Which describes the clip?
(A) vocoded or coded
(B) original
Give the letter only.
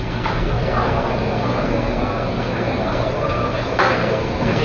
A